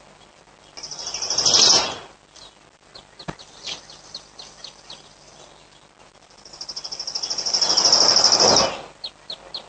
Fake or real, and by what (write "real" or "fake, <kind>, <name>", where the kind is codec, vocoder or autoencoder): real